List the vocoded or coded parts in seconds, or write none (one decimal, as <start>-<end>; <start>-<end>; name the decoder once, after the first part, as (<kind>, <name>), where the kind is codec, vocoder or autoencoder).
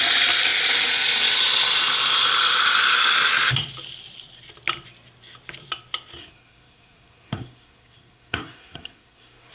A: 6.2-9.5 (codec, SNAC)